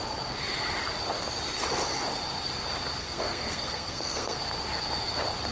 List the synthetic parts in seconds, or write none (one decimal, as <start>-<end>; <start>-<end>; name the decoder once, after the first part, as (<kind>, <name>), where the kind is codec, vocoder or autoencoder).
3.0-4.4 (codec, SNAC)